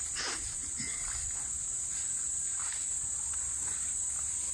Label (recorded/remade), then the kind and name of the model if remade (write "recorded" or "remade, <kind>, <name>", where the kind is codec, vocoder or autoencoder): recorded